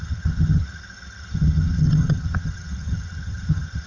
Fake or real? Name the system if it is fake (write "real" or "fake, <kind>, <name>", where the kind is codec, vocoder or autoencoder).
fake, vocoder, HiFi-GAN